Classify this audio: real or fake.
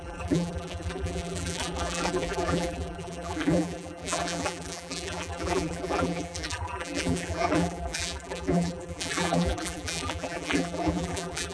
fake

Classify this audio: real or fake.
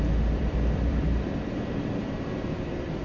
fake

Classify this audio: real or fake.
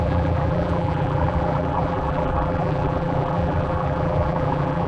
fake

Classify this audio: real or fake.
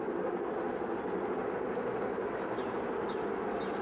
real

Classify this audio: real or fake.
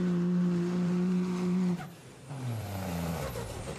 fake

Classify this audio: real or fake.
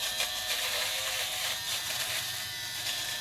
fake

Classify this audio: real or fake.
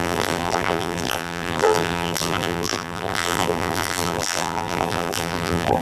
fake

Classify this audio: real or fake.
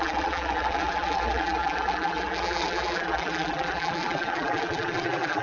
fake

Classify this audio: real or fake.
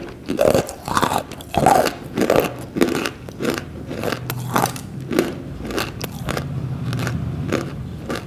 real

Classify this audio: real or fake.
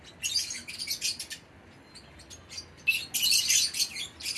real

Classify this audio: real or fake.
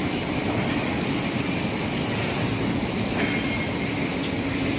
fake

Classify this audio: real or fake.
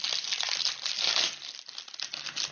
real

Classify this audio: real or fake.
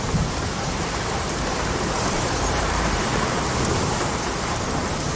fake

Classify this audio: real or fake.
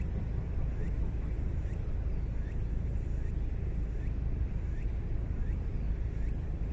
real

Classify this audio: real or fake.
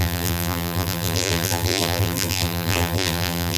fake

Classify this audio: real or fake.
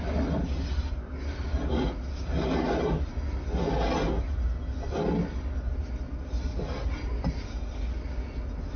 real